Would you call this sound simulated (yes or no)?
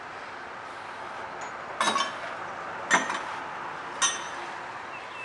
no